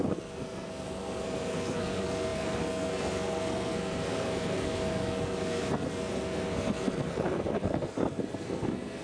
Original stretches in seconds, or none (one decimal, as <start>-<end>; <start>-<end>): none